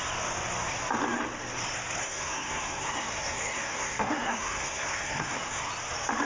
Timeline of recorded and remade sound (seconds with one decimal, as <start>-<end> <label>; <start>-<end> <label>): 0.0-2.0 recorded; 2.0-5.7 remade; 5.7-6.2 recorded

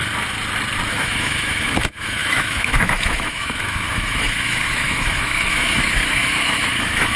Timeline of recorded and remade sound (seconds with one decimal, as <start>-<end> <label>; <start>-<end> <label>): 0.0-0.9 recorded; 0.9-7.2 remade

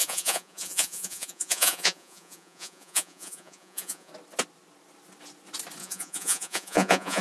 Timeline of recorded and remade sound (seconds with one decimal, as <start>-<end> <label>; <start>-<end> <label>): 0.0-4.1 remade; 4.1-5.8 recorded; 5.8-7.2 remade

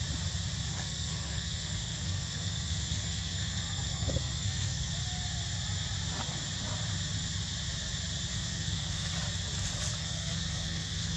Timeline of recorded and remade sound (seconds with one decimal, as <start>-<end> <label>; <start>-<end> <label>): 0.0-0.7 recorded; 0.7-4.9 remade; 4.9-8.3 recorded; 8.3-9.1 remade; 9.1-10.0 recorded; 10.0-11.2 remade